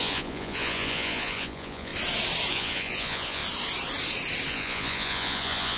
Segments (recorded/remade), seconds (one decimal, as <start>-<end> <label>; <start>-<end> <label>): 0.0-1.9 remade; 1.9-2.5 recorded; 2.5-3.4 remade; 3.4-4.5 recorded; 4.5-5.8 remade